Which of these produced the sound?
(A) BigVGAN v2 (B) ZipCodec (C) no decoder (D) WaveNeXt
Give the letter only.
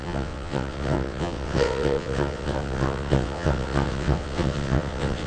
D